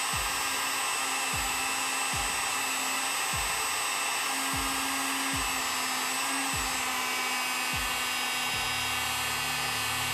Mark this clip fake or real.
real